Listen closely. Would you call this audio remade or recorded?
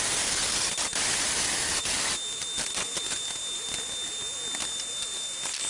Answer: recorded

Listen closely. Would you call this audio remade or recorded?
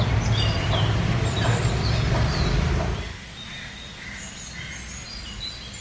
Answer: recorded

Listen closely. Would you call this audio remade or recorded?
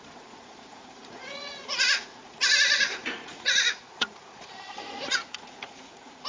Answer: remade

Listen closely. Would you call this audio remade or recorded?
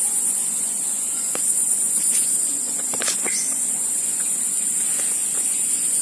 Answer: remade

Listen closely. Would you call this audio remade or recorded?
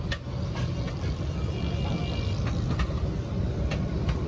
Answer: recorded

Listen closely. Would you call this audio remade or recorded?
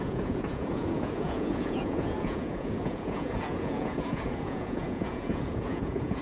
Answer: remade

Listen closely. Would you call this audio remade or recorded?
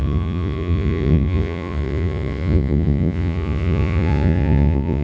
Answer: remade